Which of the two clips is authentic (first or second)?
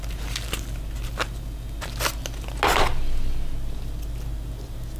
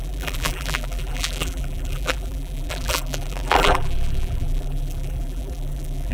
first